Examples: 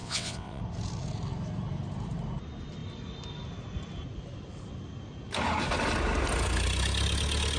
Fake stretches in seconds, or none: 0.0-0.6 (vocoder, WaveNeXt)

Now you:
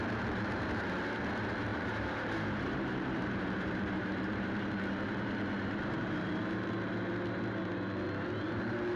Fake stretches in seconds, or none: 1.7-6.7 (vocoder, BigVGAN v2)

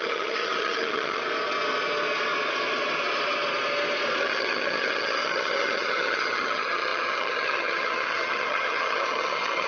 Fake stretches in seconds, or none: 0.0-1.2 (vocoder, HiFi-GAN); 4.2-9.7